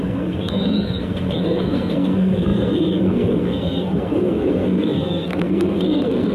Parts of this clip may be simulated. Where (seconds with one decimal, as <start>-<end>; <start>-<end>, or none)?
0.0-6.3